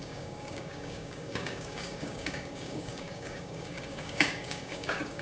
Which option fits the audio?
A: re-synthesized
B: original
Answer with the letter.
A